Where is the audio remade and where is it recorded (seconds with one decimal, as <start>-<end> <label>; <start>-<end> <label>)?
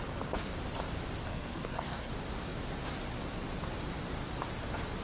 0.0-1.3 recorded; 1.3-2.1 remade; 2.1-5.0 recorded